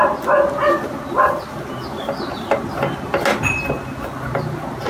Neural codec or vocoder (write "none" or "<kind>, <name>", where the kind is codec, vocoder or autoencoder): none